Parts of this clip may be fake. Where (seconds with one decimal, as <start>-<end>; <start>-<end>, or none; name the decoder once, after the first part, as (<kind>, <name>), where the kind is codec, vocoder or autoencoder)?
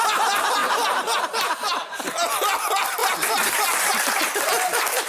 none